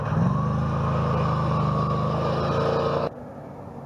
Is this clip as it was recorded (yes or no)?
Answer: yes